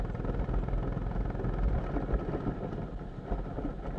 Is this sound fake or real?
real